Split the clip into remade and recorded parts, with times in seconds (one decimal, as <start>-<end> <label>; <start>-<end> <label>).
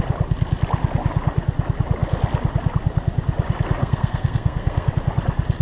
0.0-3.8 recorded; 3.8-4.9 remade; 4.9-5.6 recorded